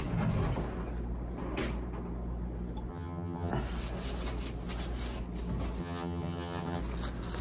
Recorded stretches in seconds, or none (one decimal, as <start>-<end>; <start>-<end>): 0.0-2.9; 3.5-5.8; 6.8-7.4